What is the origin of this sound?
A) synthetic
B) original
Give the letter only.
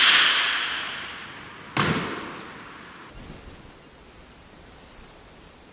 B